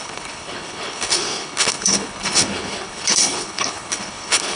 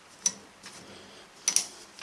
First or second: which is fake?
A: first